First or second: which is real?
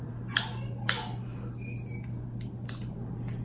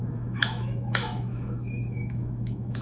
first